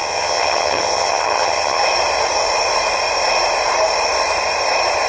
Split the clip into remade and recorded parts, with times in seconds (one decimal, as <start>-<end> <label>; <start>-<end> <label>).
0.0-1.8 remade; 1.8-5.1 recorded